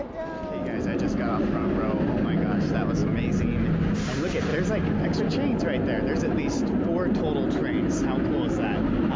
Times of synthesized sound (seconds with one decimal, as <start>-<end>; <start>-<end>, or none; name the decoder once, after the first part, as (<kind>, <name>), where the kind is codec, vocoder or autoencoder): none